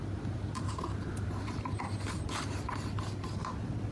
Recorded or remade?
recorded